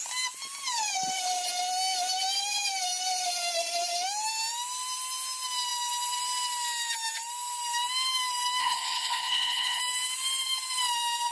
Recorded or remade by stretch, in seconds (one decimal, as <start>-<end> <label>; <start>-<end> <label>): 0.0-8.6 recorded; 8.6-9.8 remade; 9.8-11.3 recorded